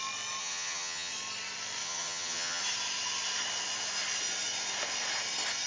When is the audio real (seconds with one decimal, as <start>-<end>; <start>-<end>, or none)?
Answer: 0.0-0.4; 1.1-1.8; 2.6-5.7